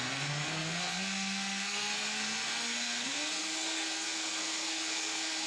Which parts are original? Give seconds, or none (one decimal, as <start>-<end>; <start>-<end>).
none